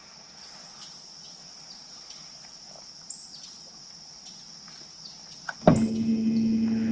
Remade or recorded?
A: recorded